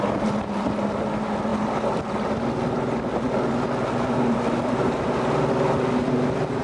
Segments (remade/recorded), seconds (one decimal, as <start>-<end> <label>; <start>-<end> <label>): 0.0-6.6 recorded